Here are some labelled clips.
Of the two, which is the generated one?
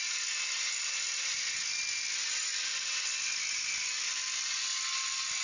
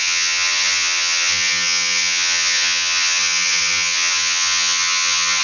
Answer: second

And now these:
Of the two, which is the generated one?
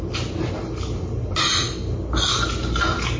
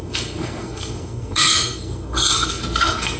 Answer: second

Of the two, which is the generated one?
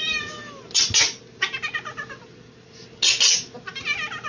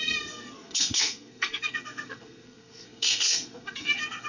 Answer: second